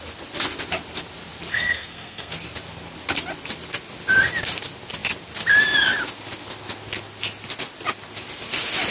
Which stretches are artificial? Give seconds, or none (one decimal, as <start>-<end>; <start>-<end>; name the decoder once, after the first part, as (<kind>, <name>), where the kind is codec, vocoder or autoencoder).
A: 1.5-2.3 (codec, SNAC)